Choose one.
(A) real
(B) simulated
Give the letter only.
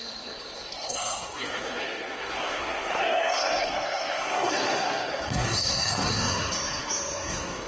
B